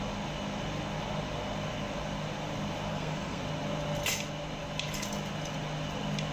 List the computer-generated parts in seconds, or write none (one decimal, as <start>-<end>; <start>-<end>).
2.9-3.4